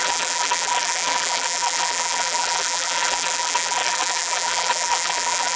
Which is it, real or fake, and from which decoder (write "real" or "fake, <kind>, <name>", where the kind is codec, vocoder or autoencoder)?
fake, vocoder, BigVGAN v2